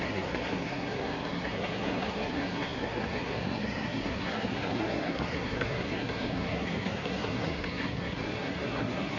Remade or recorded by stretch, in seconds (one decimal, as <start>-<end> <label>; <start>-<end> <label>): 0.0-9.2 remade